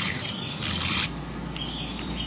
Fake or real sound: real